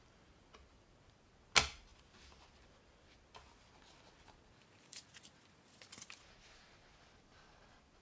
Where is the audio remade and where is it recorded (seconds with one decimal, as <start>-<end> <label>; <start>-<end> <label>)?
0.0-8.0 recorded